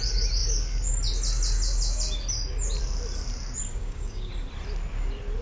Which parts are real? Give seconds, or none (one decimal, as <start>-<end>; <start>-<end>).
0.0-3.7; 4.3-5.4

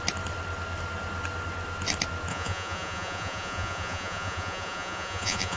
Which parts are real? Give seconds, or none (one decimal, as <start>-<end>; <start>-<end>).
0.0-2.3

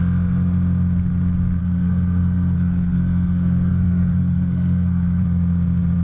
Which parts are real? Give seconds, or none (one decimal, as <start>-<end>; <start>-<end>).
0.0-1.6; 5.2-6.0

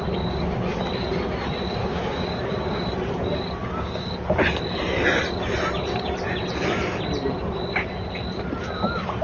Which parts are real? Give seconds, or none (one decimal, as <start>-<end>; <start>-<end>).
0.0-1.8; 2.9-3.6; 4.1-9.2

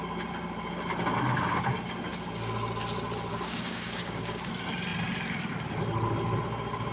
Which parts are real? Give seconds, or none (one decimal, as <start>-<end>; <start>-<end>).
0.0-3.3; 4.5-6.9